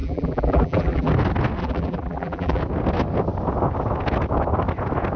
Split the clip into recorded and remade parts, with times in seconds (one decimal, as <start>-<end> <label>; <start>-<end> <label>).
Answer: 0.0-1.1 remade; 1.1-1.6 recorded; 1.6-2.6 remade; 2.6-5.2 recorded